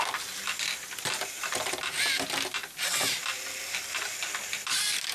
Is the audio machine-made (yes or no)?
no